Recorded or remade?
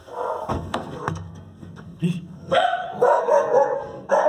remade